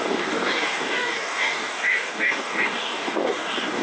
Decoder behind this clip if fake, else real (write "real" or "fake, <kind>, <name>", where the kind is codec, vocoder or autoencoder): fake, codec, DAC